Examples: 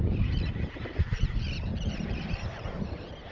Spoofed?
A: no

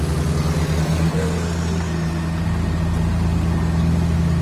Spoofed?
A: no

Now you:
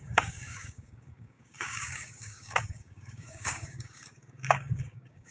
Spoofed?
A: yes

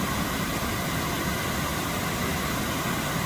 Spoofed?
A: no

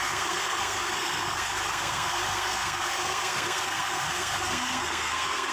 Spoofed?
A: yes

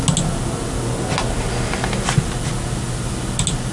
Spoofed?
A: no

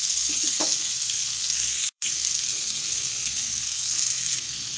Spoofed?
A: yes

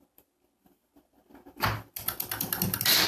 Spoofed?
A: no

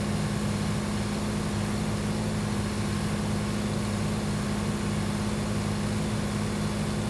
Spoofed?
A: no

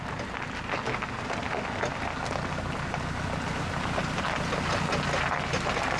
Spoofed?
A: no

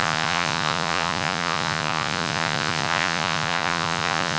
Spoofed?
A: yes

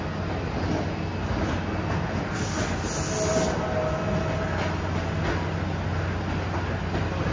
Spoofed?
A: no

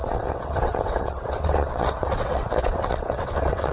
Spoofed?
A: yes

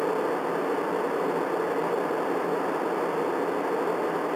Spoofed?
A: no